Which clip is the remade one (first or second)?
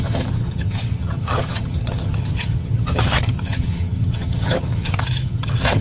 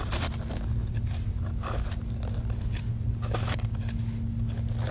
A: first